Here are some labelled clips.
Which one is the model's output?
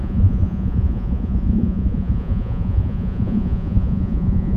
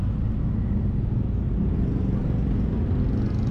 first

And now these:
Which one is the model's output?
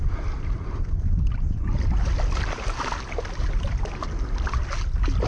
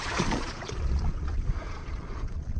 second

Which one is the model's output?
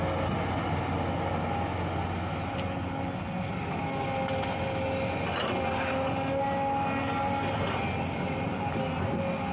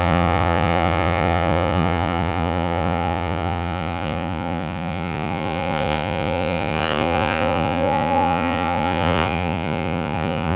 second